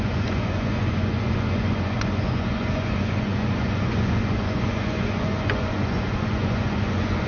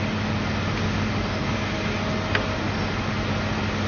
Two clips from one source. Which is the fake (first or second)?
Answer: first